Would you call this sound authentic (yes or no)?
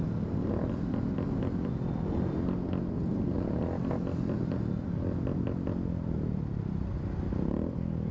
yes